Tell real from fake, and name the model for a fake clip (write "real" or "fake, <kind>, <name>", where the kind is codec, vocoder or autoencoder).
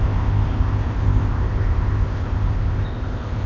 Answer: fake, codec, ZipCodec